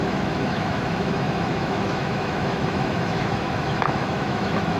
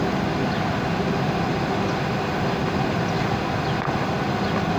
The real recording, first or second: second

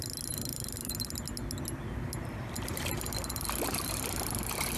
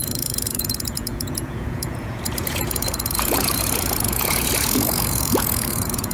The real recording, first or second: first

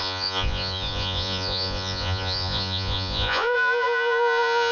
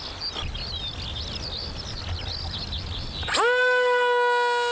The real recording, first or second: second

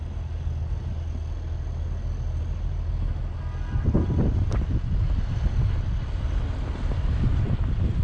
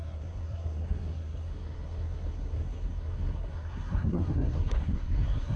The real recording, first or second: first